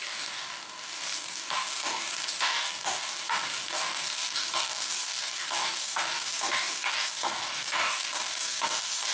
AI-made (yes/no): yes